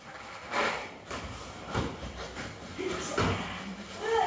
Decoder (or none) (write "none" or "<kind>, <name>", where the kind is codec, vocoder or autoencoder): none